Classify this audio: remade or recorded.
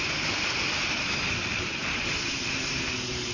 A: recorded